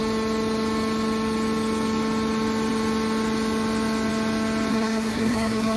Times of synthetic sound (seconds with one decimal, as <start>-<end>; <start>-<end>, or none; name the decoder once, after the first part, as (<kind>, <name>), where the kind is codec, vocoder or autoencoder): 4.7-5.8 (codec, SNAC)